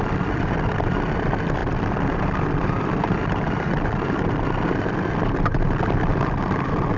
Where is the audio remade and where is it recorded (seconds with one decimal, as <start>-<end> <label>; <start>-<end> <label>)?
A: 0.0-7.0 recorded